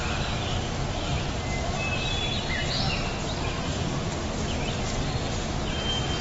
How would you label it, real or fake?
real